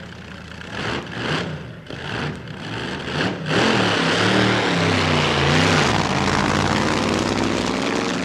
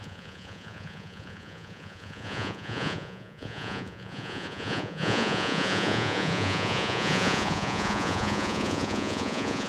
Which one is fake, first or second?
second